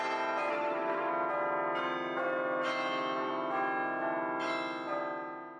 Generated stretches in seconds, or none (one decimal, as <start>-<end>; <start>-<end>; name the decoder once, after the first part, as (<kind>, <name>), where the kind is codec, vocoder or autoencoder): 0.5-1.1 (autoencoder, DAC-VAE)